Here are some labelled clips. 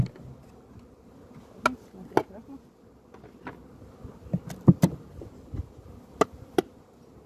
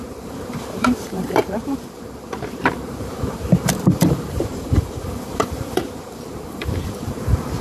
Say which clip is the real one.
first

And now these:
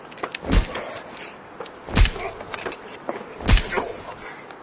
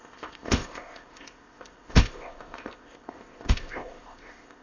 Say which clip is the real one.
first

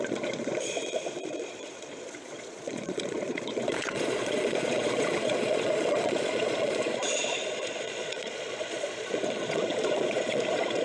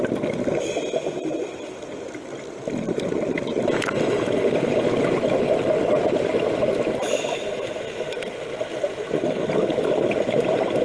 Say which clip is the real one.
second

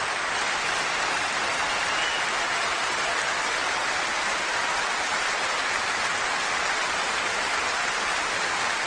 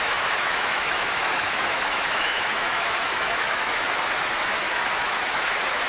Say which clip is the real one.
first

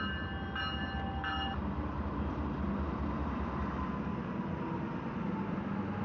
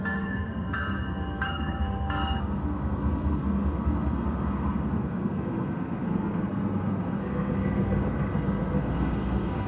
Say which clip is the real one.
first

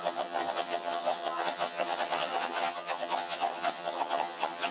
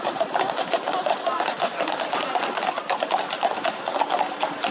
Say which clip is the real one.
second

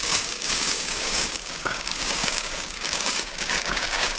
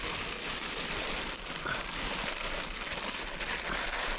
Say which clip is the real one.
second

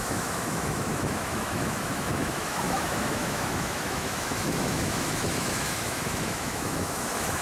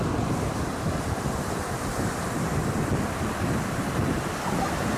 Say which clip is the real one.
second